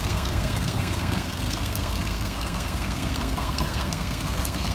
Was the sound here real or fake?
fake